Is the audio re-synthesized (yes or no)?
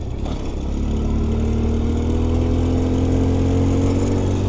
no